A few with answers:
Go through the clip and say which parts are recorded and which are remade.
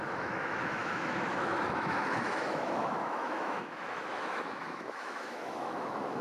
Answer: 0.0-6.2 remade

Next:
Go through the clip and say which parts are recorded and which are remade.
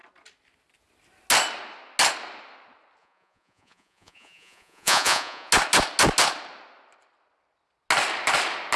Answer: 0.0-3.0 recorded; 3.0-5.5 remade; 5.5-8.8 recorded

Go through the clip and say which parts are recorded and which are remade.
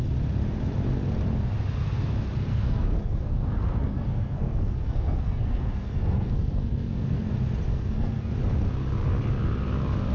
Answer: 0.0-2.5 recorded; 2.5-7.3 remade; 7.3-7.7 recorded; 7.7-8.3 remade; 8.3-10.1 recorded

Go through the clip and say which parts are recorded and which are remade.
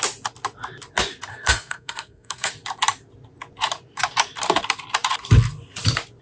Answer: 0.0-1.3 recorded; 1.3-2.5 remade; 2.5-6.2 recorded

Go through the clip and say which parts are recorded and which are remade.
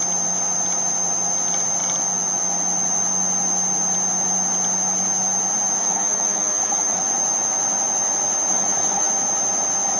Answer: 0.0-5.8 recorded; 5.8-7.0 remade; 7.0-8.5 recorded; 8.5-9.1 remade; 9.1-10.0 recorded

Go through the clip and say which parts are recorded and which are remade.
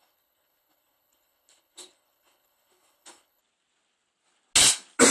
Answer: 0.0-3.4 remade; 3.4-5.1 recorded